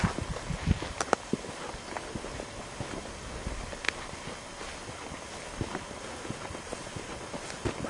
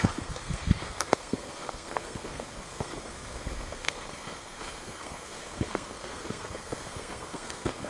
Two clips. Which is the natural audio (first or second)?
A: first